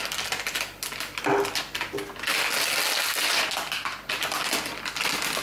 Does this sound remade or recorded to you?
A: recorded